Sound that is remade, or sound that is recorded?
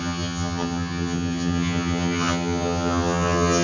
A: remade